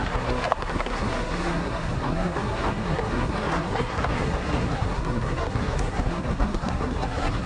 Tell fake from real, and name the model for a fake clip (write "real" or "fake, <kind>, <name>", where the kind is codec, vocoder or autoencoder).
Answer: fake, codec, SNAC